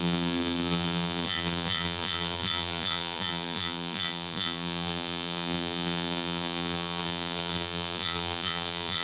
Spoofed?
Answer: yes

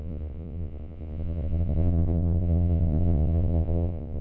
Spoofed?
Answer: yes